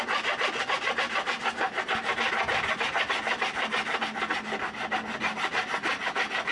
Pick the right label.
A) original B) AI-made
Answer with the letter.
A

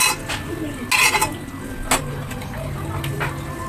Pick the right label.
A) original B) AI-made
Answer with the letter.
A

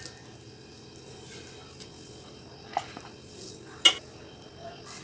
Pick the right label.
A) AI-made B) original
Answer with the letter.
B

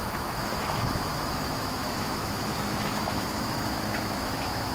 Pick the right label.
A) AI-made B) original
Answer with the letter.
A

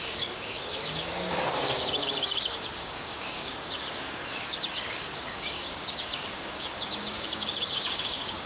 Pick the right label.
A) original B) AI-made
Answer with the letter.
B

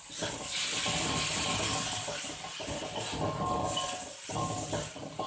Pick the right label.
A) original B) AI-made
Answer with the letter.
A